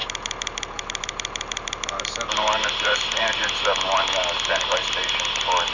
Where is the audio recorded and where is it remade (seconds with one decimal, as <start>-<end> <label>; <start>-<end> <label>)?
0.0-5.7 recorded